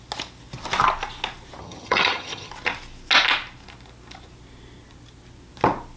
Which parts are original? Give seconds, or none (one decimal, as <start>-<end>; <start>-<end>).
0.0-1.6; 2.5-6.0